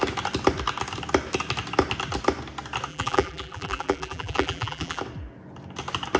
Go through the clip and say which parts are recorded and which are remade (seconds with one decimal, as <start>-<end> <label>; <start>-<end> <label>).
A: 0.0-2.9 recorded; 2.9-5.0 remade; 5.0-6.2 recorded